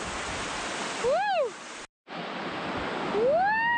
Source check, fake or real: real